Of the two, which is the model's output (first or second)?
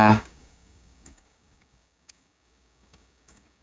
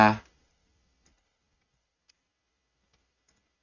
first